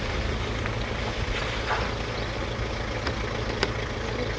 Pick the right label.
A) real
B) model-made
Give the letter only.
A